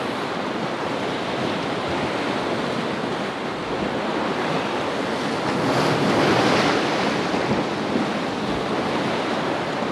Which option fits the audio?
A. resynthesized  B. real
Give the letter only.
B